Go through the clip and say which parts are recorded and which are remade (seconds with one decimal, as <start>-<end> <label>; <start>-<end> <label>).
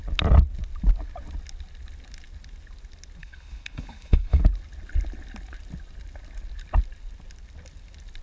0.0-3.2 recorded; 3.2-4.4 remade; 4.4-8.2 recorded